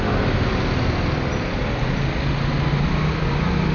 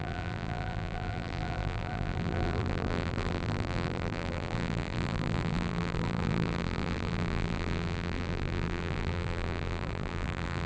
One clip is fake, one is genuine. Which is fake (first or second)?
second